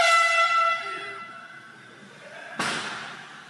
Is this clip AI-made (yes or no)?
yes